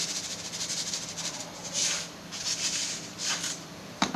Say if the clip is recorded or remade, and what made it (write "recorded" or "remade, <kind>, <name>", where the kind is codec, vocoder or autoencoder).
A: recorded